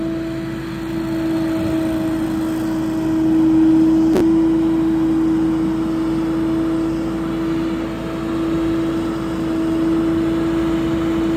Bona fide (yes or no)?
yes